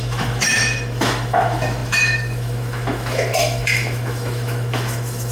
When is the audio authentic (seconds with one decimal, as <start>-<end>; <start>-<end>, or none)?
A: none